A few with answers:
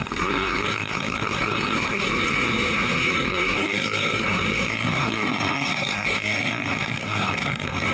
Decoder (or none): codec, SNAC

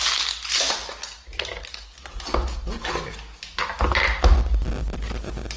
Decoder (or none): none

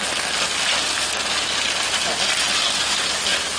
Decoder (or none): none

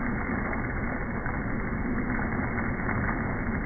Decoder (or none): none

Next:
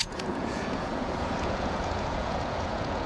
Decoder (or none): vocoder, Vocos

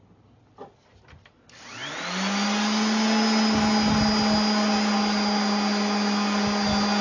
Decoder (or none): none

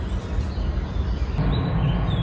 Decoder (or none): none